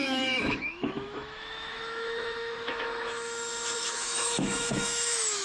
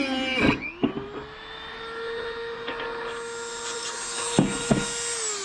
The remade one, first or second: first